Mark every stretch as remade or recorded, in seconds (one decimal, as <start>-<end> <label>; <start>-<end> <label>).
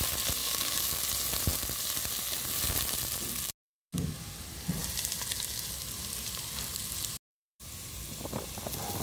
0.0-0.4 recorded; 0.4-1.0 remade; 1.0-9.0 recorded